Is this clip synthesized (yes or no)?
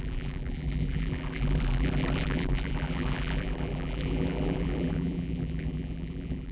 yes